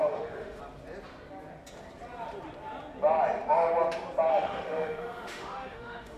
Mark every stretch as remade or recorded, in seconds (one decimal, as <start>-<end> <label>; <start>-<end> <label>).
0.0-0.6 remade; 0.6-4.3 recorded; 4.3-6.2 remade